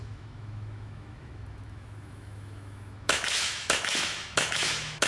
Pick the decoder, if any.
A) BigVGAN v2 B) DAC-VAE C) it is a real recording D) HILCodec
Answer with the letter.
B